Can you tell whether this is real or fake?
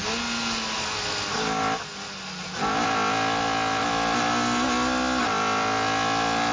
real